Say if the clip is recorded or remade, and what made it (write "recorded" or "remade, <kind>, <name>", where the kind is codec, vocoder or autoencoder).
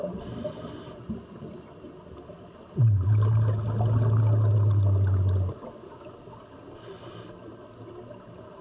recorded